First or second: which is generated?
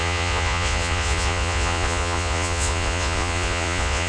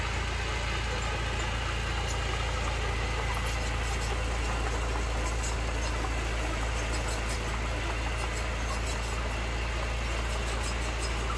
first